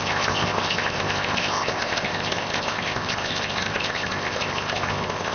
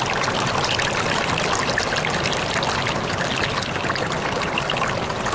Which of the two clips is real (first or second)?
second